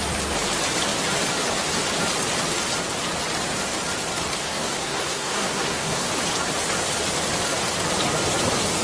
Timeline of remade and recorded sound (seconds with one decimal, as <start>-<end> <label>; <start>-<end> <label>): 0.0-4.4 recorded; 4.4-6.1 remade; 6.1-8.8 recorded